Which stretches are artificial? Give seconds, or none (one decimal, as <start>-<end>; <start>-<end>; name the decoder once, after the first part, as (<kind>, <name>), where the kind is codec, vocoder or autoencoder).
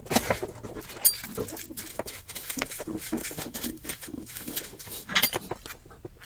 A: 1.9-5.1 (autoencoder, DAC-VAE)